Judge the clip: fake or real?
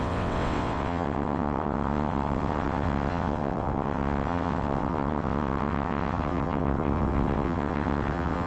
fake